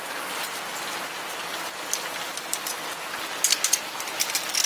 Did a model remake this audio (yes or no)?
no